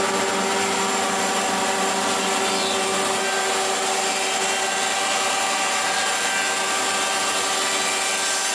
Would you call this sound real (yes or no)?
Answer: yes